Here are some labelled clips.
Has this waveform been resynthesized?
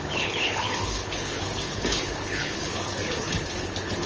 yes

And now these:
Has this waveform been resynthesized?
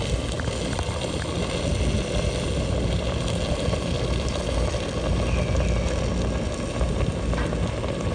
no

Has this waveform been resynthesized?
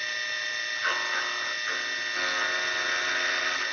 no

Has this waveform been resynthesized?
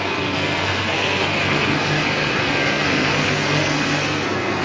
yes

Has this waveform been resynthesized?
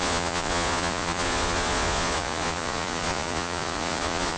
yes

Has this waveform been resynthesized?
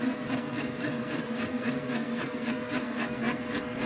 yes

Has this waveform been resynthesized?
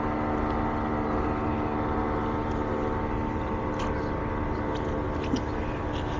no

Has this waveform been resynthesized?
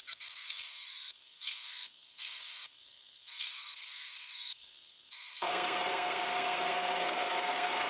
yes